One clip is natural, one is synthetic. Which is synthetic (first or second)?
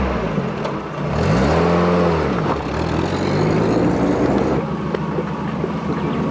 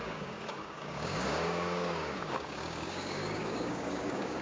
second